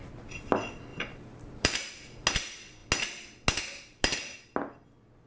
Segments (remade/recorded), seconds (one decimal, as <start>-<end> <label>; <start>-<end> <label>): 0.0-0.9 recorded; 0.9-1.9 remade; 1.9-5.3 recorded